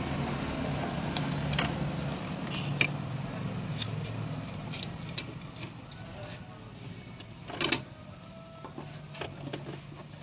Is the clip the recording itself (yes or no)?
yes